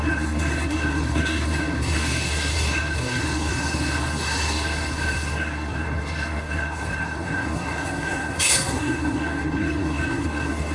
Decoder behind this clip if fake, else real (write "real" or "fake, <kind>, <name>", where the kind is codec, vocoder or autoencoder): fake, codec, SNAC